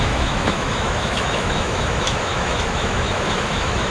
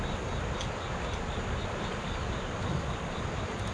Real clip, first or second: second